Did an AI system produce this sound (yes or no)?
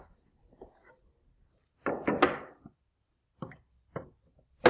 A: no